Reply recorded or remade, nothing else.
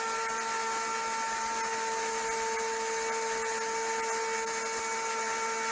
recorded